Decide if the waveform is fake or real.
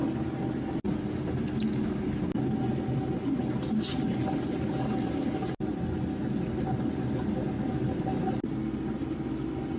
real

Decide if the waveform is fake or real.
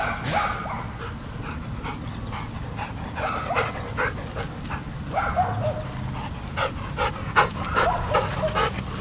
real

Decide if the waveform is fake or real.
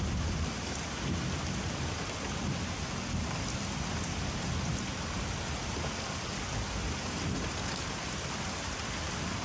real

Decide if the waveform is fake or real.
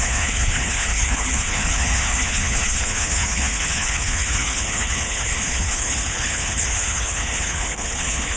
fake